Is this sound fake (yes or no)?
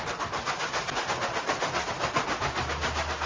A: no